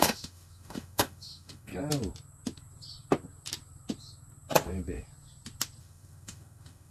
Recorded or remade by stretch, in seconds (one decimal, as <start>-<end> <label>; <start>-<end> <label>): 0.0-1.7 remade; 1.7-5.8 recorded; 5.8-6.9 remade